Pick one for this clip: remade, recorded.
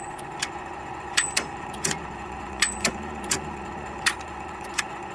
remade